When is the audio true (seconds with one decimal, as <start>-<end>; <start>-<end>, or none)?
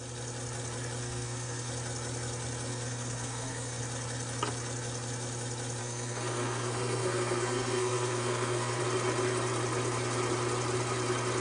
0.0-1.0; 1.7-2.7; 3.8-5.8; 8.8-11.4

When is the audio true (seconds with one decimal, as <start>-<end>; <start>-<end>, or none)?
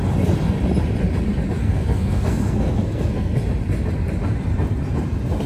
0.0-1.6; 3.4-5.5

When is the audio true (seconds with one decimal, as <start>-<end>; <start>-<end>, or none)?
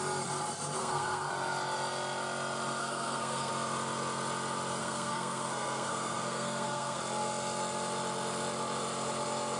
0.0-0.8; 1.3-2.8; 3.5-4.8; 7.0-9.6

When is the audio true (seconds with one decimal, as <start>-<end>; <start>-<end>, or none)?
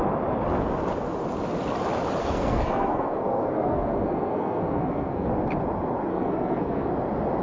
0.0-2.2; 5.3-6.1; 6.9-7.4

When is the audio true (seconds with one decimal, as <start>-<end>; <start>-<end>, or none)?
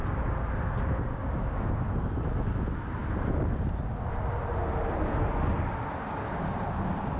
0.0-7.2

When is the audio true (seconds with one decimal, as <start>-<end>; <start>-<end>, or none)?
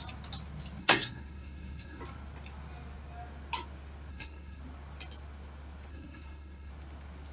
0.0-0.8; 2.0-4.1; 4.6-5.9; 6.7-7.3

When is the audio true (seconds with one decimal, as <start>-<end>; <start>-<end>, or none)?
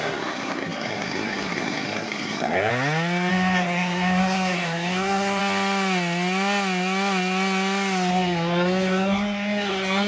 2.7-3.3; 5.4-8.1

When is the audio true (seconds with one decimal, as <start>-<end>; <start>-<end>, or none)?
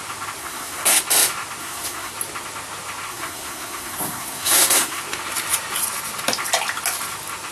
0.0-0.4; 1.0-1.6; 2.1-3.1; 5.0-7.5